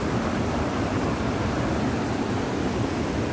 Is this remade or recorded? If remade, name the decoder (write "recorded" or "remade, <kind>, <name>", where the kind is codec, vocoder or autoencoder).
recorded